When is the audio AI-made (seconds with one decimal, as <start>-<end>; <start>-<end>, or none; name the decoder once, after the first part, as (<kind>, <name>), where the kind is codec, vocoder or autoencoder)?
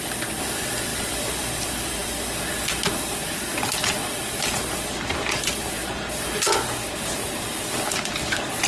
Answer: none